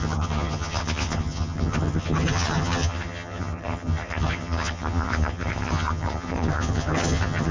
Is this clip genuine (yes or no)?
no